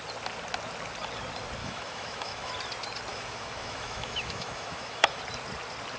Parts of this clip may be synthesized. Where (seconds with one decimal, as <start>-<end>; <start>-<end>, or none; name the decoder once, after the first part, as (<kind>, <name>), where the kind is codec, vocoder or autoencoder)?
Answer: 1.6-2.5 (autoencoder, DAC-VAE); 3.1-5.2